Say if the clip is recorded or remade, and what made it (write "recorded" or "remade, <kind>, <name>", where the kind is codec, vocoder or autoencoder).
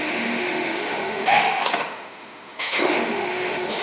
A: remade, autoencoder, DAC-VAE